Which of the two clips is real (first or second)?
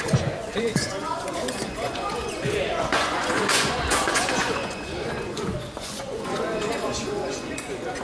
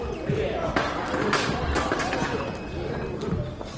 second